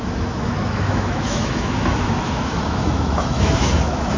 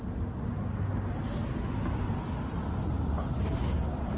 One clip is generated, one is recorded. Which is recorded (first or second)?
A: second